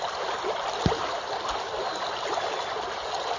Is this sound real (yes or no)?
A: yes